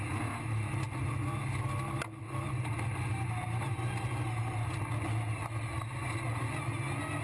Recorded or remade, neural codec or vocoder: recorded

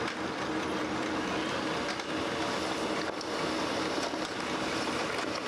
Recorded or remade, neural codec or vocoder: recorded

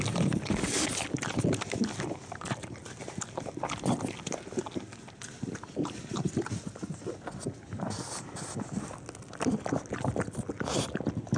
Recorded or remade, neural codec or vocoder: recorded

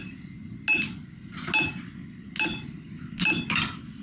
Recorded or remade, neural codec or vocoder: recorded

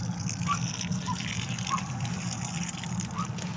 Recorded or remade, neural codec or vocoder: recorded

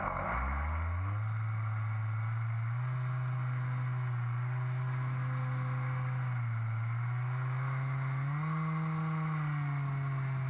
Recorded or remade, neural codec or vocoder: recorded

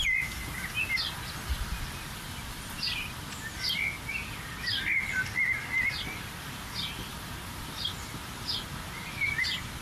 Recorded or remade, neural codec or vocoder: recorded